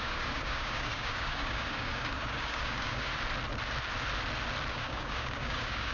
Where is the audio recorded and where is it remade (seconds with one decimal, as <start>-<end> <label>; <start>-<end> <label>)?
0.0-3.1 remade; 3.1-4.7 recorded; 4.7-5.9 remade